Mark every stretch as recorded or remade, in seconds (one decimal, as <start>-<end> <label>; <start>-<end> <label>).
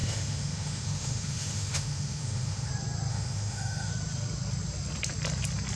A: 0.0-2.7 remade; 2.7-3.1 recorded; 3.1-3.9 remade; 3.9-5.8 recorded